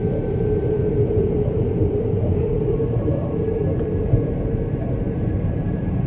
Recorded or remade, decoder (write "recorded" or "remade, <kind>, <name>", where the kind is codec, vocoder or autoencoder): remade, vocoder, BigVGAN v2